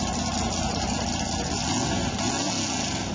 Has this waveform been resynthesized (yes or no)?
no